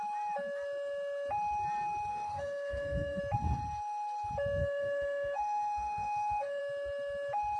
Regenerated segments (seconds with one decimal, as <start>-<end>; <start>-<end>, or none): 2.1-3.2; 4.6-6.6